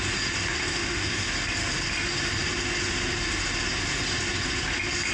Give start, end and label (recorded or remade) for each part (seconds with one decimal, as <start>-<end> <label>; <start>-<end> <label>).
0.0-0.7 recorded; 0.7-1.3 remade; 1.3-5.1 recorded